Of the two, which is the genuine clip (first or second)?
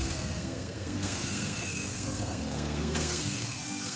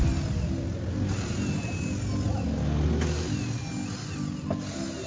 second